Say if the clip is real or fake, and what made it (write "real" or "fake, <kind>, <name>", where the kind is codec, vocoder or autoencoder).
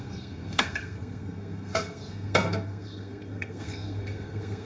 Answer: fake, codec, SNAC